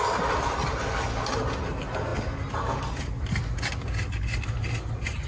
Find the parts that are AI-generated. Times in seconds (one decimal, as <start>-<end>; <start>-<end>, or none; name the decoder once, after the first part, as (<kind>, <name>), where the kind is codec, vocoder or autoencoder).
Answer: none